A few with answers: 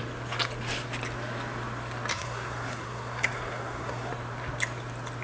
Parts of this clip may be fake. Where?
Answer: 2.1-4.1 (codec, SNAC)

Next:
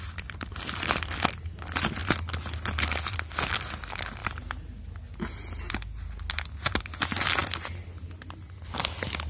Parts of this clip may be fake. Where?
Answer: none